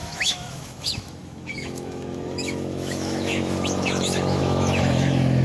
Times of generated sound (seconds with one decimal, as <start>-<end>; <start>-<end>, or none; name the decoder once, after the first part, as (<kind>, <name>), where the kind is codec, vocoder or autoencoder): 0.0-5.4 (autoencoder, DAC-VAE)